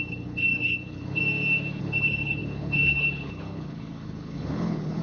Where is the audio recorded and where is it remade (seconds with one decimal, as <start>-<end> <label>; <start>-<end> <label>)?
0.0-1.2 remade; 1.2-1.8 recorded; 1.8-5.0 remade